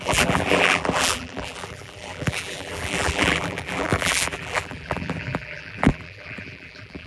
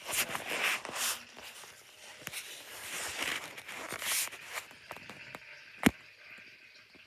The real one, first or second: second